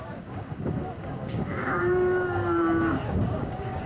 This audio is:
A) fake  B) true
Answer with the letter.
A